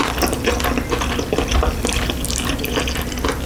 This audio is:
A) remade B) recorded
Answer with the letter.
B